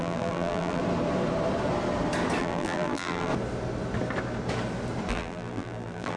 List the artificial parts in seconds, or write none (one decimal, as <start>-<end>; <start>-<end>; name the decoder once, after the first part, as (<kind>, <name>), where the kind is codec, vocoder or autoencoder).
0.0-0.8 (vocoder, BigVGAN v2); 2.4-3.3; 5.1-6.2